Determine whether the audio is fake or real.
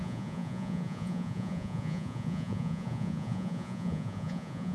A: fake